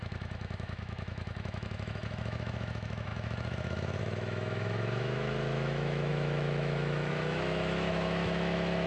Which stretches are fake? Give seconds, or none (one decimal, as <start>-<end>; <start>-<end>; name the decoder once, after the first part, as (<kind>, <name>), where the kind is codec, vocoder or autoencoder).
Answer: 0.0-8.9 (autoencoder, DAC-VAE)